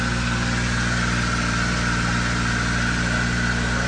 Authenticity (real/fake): real